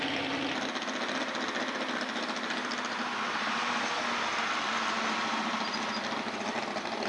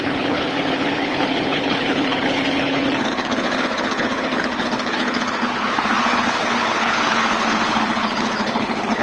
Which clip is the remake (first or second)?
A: second